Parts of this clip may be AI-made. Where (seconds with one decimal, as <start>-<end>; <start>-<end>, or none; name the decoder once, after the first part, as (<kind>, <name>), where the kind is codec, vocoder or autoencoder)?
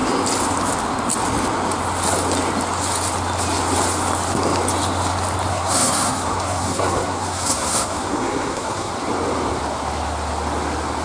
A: 5.5-8.9 (codec, SNAC)